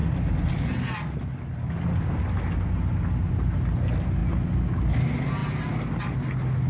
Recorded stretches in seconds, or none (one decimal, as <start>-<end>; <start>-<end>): 0.0-6.7